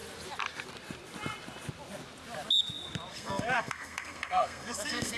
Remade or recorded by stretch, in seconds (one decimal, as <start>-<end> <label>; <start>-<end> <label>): 0.0-3.1 recorded; 3.1-5.2 remade